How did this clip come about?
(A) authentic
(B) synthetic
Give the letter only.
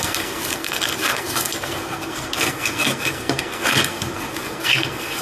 B